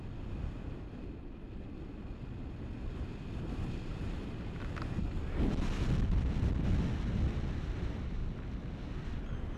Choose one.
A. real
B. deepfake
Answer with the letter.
A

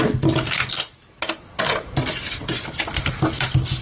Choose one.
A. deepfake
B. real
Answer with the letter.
B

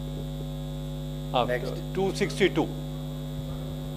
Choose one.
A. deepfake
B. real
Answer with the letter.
B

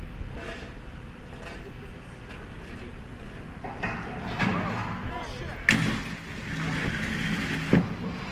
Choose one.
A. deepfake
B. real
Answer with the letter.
B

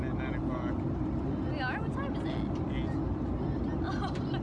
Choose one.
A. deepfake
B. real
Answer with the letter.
B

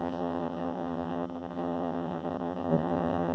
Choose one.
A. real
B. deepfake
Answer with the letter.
B